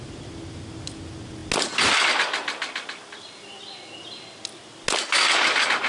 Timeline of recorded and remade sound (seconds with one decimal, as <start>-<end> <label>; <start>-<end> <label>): 0.0-5.9 recorded